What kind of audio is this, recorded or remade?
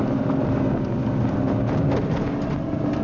recorded